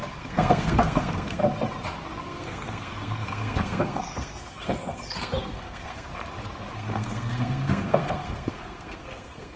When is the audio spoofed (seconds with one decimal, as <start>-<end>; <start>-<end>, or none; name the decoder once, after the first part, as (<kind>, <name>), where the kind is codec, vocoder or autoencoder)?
0.0-1.4 (codec, SNAC); 2.2-6.1; 6.7-9.6